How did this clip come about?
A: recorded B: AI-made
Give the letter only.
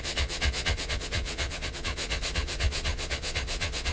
B